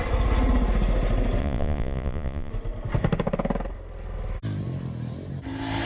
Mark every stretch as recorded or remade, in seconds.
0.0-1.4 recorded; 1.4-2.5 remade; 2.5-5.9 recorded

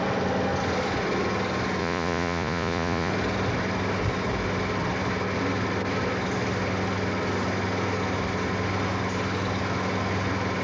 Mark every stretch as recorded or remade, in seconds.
0.0-1.8 recorded; 1.8-3.1 remade; 3.1-10.6 recorded

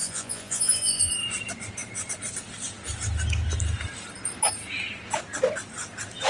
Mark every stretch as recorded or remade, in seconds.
0.0-1.1 remade; 1.1-6.3 recorded

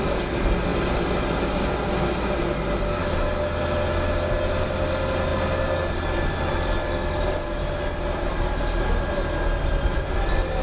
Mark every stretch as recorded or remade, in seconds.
0.0-10.6 recorded

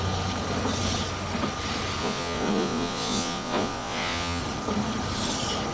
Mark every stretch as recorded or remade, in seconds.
0.0-2.0 recorded; 2.0-4.4 remade; 4.4-5.7 recorded

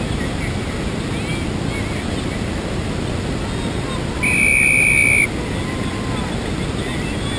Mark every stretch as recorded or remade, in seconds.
0.0-7.4 recorded

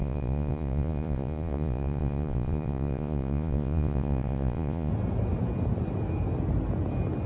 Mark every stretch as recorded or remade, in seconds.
0.0-4.9 remade; 4.9-7.3 recorded